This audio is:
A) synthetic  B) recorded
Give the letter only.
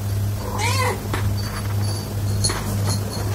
B